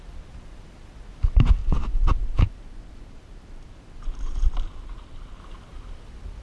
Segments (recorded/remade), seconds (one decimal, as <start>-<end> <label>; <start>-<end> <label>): 0.0-1.6 recorded; 1.6-5.4 remade; 5.4-6.4 recorded